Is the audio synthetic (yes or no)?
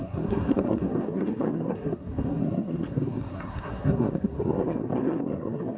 yes